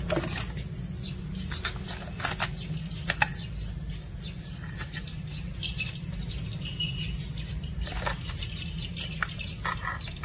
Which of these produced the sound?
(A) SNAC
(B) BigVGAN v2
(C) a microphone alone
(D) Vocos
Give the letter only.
C